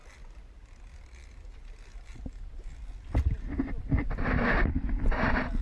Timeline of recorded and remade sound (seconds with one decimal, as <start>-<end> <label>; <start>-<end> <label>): 0.0-5.6 recorded